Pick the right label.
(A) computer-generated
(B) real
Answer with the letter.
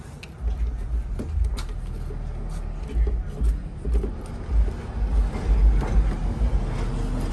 B